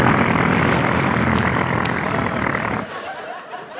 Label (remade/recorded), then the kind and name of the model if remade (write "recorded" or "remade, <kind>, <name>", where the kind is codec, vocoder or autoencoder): recorded